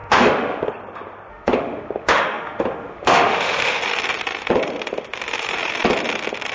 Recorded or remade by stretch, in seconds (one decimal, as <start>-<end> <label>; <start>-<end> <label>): 0.0-0.7 remade; 0.7-1.3 recorded; 1.3-3.8 remade; 3.8-6.5 recorded